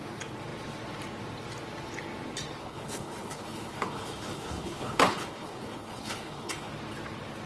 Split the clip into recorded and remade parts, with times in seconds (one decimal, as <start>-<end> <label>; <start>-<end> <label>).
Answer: 0.0-2.6 recorded; 2.6-6.7 remade; 6.7-7.5 recorded